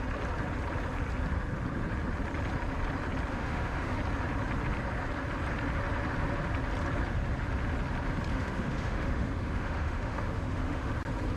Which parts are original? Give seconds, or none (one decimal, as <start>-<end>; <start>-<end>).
0.0-3.3; 4.0-8.3; 10.9-11.4